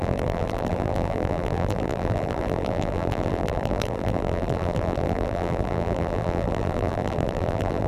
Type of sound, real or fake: fake